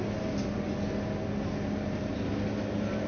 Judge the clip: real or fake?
real